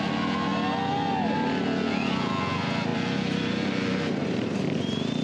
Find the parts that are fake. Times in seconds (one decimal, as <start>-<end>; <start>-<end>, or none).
2.9-4.8